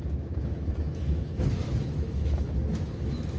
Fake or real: fake